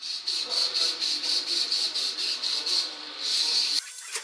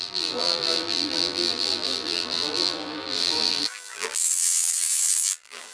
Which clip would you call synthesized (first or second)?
second